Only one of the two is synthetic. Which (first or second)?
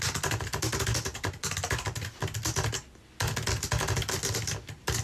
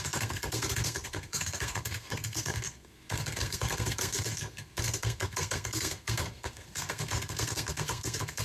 second